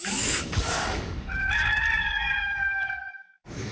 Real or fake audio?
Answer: fake